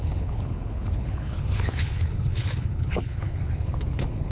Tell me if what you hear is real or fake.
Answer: fake